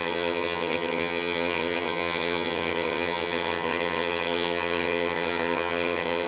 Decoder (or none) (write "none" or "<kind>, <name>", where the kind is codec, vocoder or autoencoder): vocoder, HiFi-GAN